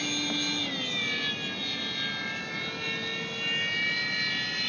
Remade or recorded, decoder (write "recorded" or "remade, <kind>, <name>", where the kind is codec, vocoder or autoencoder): recorded